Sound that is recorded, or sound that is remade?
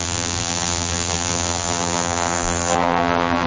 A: remade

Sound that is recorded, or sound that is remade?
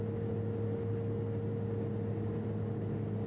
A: recorded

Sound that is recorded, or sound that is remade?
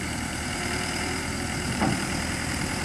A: remade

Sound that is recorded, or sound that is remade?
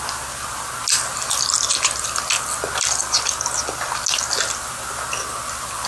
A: recorded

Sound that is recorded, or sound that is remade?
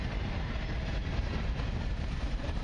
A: remade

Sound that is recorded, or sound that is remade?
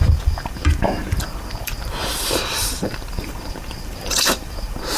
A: remade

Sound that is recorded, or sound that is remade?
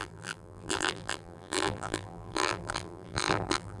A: remade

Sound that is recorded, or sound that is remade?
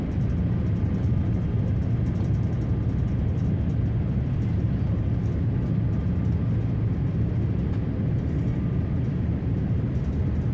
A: recorded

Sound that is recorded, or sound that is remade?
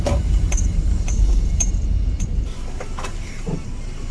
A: remade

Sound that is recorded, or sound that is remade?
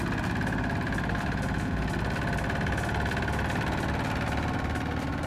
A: recorded